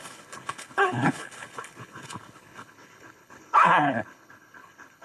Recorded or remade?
remade